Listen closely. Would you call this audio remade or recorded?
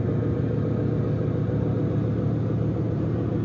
recorded